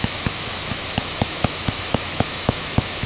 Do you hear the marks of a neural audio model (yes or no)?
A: yes